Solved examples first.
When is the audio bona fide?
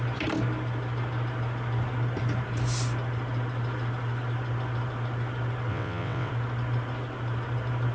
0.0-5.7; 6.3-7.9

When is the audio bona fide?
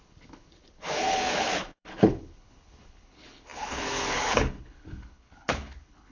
none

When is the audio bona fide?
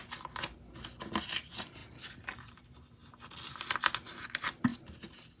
0.0-5.4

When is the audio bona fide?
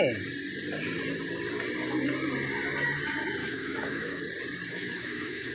0.0-3.4; 4.2-4.7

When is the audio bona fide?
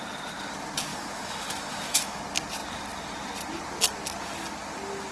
0.0-0.9; 2.2-5.1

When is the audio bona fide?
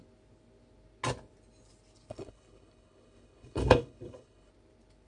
0.0-2.1; 4.5-5.1